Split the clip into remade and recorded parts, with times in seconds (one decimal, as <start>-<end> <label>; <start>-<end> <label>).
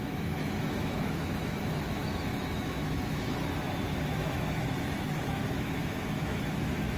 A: 0.0-7.0 remade